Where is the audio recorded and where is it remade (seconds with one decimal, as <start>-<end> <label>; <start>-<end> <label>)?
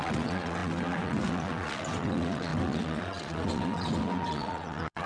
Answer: 0.0-5.1 remade